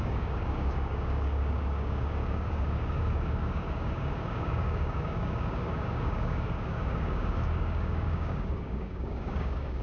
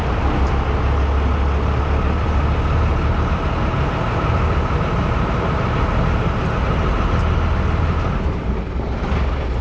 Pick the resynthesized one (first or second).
first